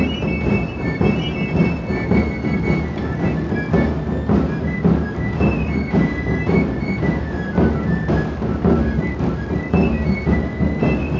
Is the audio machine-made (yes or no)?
no